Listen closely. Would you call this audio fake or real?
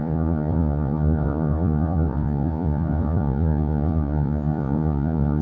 fake